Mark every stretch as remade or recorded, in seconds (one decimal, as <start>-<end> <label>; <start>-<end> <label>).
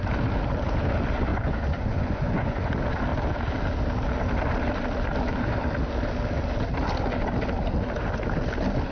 0.0-1.3 recorded; 1.3-2.6 remade; 2.6-8.9 recorded